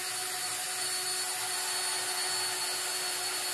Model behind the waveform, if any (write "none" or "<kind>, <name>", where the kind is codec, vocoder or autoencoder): none